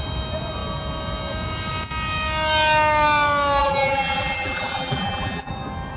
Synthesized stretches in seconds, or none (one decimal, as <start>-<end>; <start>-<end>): 3.6-5.5